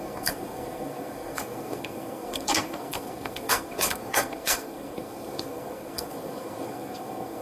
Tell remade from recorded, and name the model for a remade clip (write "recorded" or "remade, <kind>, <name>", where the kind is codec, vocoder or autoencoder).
remade, codec, SNAC